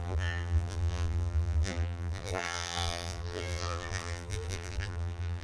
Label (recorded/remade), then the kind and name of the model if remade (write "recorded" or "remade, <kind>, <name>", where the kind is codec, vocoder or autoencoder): remade, vocoder, BigVGAN v2